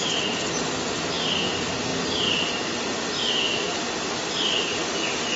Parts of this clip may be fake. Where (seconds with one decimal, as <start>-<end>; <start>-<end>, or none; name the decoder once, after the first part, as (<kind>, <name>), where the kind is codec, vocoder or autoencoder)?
1.9-4.6 (vocoder, BigVGAN v2)